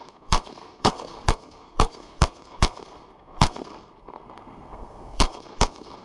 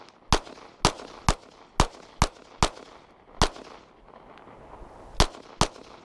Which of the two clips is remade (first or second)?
first